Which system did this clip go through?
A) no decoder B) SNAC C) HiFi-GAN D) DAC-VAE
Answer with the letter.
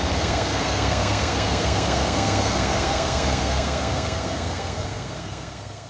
B